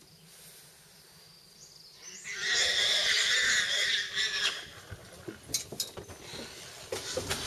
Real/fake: real